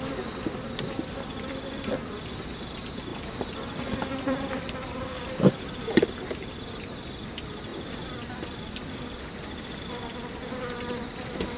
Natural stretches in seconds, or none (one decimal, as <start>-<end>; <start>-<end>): 0.0-3.1; 7.3-7.7; 9.9-11.6